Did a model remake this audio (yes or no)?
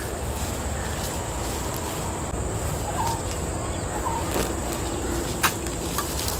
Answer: no